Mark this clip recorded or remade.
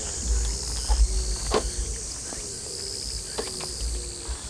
recorded